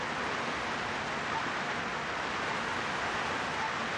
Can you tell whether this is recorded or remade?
recorded